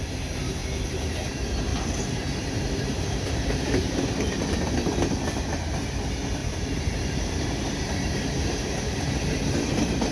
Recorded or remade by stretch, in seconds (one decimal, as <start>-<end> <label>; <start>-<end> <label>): 0.0-0.6 recorded; 0.6-1.1 remade; 1.1-1.7 recorded; 1.7-4.4 remade; 4.4-6.4 recorded; 6.4-10.1 remade